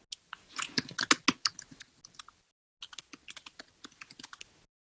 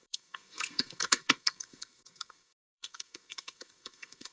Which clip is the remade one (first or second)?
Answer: second